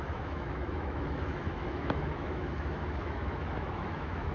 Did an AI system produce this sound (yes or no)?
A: yes